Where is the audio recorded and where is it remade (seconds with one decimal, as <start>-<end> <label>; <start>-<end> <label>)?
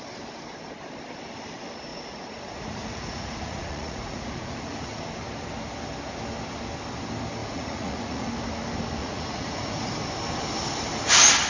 0.0-1.9 recorded; 1.9-5.0 remade; 5.0-7.4 recorded; 7.4-8.3 remade; 8.3-9.0 recorded; 9.0-9.9 remade; 9.9-11.5 recorded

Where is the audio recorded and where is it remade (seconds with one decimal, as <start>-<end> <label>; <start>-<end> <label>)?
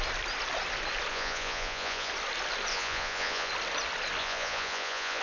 0.0-1.1 recorded; 1.1-2.1 remade; 2.1-2.7 recorded; 2.7-3.5 remade; 3.5-4.2 recorded; 4.2-5.2 remade